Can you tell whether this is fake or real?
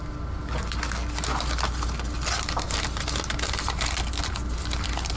real